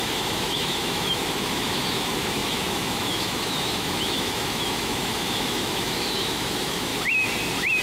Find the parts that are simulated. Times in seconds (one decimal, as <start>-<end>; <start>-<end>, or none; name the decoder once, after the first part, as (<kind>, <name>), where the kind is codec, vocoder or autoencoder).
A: 0.0-6.9 (autoencoder, DAC-VAE)